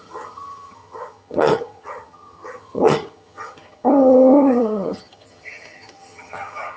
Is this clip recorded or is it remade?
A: remade